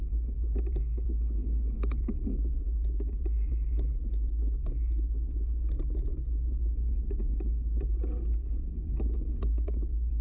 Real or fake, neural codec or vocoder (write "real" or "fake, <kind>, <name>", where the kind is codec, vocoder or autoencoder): real